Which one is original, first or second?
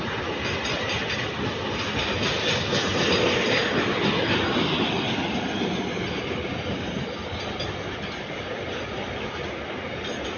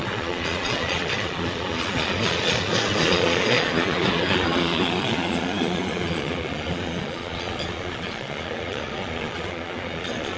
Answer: first